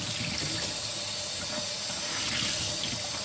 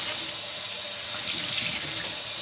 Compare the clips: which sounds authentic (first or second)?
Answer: second